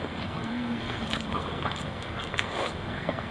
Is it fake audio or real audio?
fake